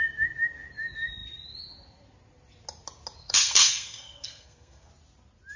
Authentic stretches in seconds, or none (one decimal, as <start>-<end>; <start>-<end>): 0.0-3.2; 4.9-5.6